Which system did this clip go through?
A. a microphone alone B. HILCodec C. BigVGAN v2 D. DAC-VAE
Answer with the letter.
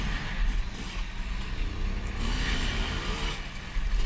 A